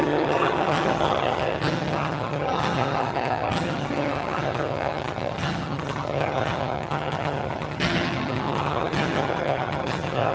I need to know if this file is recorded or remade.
remade